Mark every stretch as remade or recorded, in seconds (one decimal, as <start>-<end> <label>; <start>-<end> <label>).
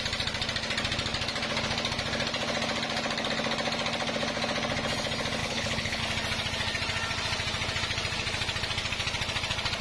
0.0-5.4 recorded; 5.4-6.0 remade; 6.0-9.8 recorded